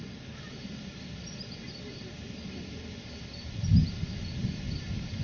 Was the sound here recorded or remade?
recorded